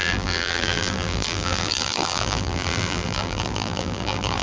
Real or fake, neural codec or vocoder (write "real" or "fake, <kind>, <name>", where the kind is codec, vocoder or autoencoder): fake, vocoder, BigVGAN v2